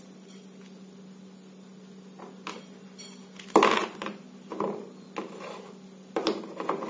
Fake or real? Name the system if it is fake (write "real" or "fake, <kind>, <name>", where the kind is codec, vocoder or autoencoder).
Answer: real